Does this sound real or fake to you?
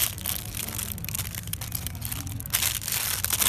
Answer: real